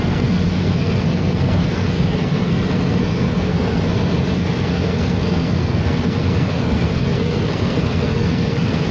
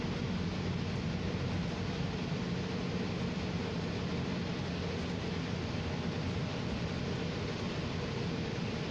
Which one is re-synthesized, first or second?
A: first